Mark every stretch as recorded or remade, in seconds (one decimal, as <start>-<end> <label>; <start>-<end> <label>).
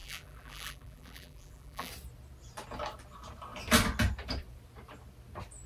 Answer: 0.0-1.9 remade; 1.9-5.7 recorded